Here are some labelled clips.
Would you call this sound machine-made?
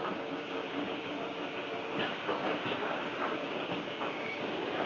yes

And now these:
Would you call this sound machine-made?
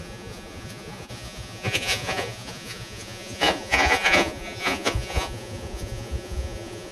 yes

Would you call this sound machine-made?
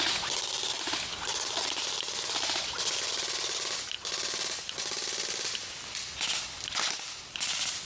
no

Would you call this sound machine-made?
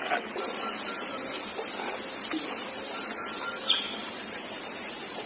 no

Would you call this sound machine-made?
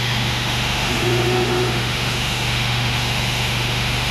yes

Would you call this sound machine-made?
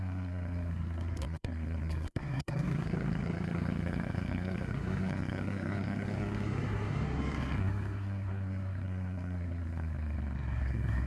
yes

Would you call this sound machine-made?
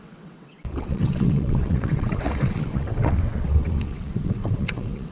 yes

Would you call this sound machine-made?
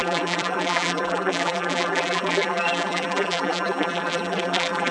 yes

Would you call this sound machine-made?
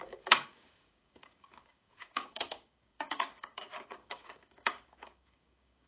yes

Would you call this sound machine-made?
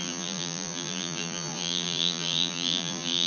yes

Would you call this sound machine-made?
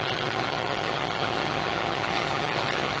yes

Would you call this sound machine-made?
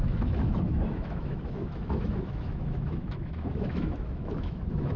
yes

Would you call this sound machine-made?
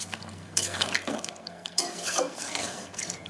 yes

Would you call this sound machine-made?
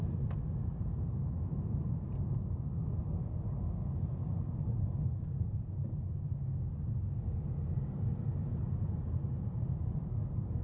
no